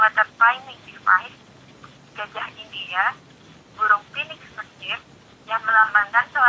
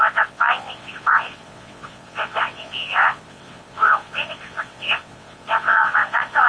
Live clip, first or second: first